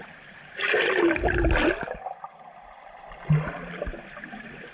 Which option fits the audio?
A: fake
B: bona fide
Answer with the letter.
B